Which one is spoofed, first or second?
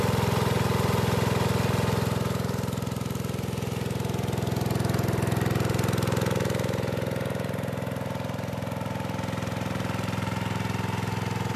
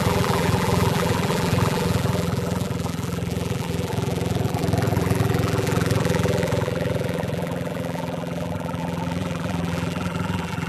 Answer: second